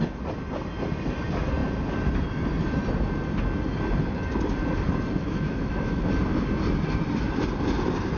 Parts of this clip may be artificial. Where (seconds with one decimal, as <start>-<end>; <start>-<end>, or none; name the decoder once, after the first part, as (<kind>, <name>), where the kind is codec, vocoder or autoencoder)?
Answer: 5.2-6.1 (autoencoder, DAC-VAE)